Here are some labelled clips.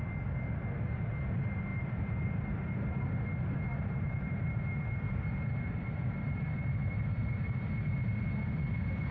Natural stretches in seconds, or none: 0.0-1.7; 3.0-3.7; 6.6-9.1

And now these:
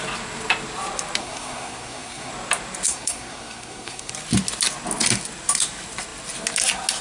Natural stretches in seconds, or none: 0.0-1.2; 2.3-2.9; 4.1-7.0

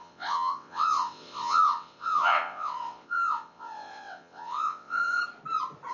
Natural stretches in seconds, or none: 5.2-5.9